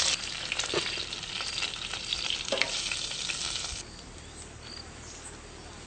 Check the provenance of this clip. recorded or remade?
recorded